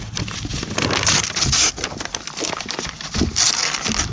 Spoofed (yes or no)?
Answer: no